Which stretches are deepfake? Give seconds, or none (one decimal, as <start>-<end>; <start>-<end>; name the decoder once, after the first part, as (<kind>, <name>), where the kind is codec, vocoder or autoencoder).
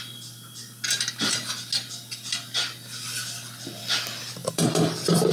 4.4-5.3 (vocoder, BigVGAN v2)